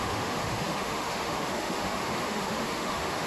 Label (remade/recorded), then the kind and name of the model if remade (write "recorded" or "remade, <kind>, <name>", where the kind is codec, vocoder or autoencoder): remade, autoencoder, DAC-VAE